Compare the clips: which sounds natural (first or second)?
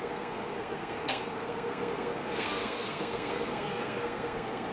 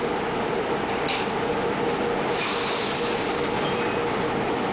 second